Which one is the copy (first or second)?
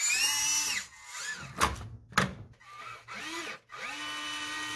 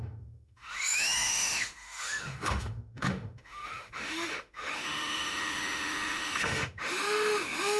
second